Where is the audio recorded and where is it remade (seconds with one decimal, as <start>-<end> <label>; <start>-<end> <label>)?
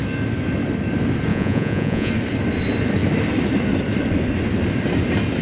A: 0.0-1.3 recorded; 1.3-2.1 remade; 2.1-5.4 recorded